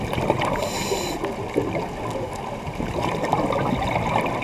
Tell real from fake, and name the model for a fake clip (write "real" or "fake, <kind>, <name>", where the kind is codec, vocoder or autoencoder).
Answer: real